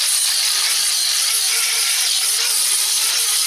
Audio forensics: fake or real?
fake